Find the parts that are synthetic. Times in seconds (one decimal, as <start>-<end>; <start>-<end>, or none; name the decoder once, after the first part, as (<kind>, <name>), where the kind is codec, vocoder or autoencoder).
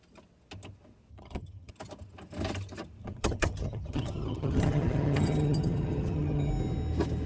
1.1-1.7 (vocoder, HiFi-GAN); 3.0-6.5